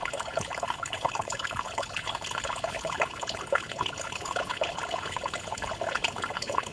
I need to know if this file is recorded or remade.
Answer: remade